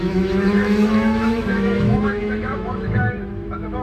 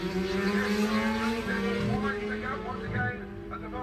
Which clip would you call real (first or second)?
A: second